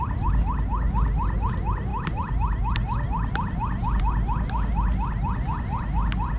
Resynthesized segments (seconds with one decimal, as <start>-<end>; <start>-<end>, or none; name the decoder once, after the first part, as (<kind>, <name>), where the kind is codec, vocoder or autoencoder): none